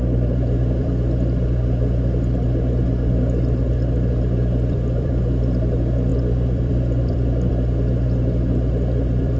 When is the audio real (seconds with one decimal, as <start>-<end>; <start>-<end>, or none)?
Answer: none